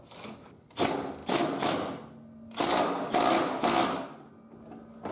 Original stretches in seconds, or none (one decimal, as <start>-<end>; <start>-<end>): 0.0-5.1

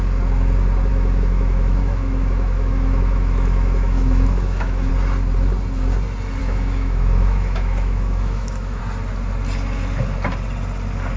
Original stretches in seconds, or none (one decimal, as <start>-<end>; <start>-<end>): 0.0-0.9; 4.9-6.4; 8.8-11.2

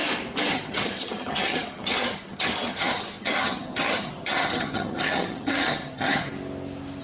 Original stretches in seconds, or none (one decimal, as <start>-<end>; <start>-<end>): 0.0-0.5; 6.3-7.0

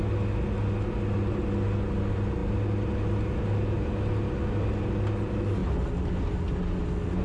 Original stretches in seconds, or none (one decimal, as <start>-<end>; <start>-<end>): 0.0-7.2

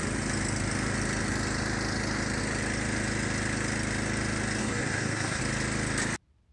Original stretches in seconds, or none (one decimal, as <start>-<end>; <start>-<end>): 0.0-4.6; 5.4-6.5

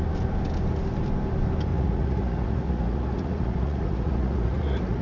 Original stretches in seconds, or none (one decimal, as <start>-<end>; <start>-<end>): 0.0-1.7

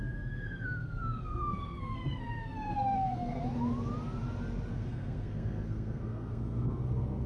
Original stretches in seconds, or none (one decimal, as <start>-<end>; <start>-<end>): 3.4-4.7

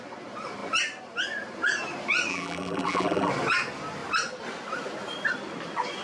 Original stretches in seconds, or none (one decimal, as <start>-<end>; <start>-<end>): 0.0-2.3; 3.3-6.0